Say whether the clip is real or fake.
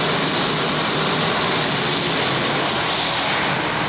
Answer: real